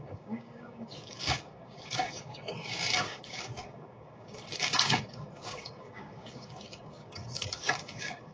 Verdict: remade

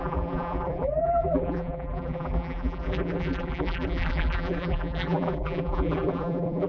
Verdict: remade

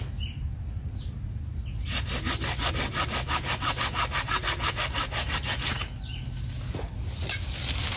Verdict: recorded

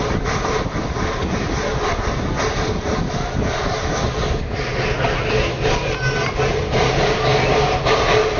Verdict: recorded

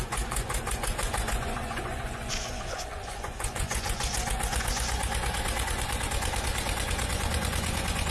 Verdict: remade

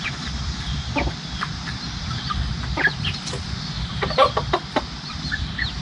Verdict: remade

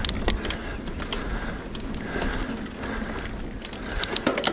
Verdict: recorded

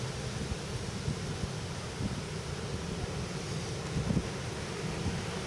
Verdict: recorded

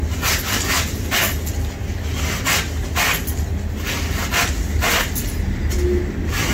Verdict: recorded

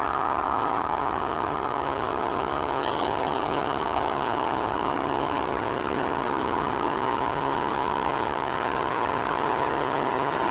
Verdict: remade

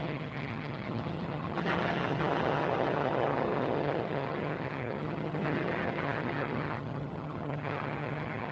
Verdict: remade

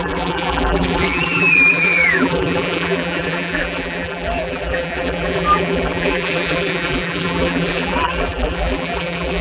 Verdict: remade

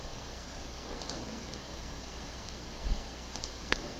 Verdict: remade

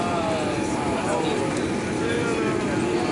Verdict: recorded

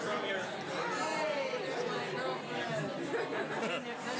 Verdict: recorded